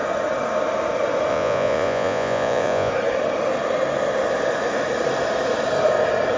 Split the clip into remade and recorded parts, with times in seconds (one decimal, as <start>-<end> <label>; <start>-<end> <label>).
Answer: 0.0-1.3 recorded; 1.3-2.9 remade; 2.9-6.4 recorded